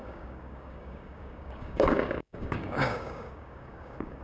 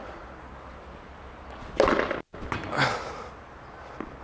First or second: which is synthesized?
first